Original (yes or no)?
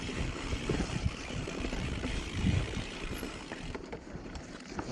no